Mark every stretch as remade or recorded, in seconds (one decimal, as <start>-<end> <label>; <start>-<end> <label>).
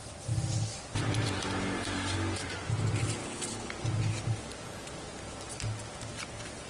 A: 0.0-3.2 recorded; 3.2-3.7 remade; 3.7-6.7 recorded